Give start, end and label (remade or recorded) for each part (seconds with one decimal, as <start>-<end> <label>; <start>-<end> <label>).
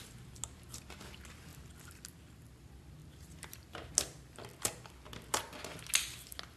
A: 0.0-6.6 recorded